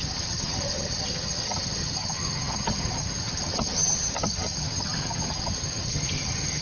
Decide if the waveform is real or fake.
fake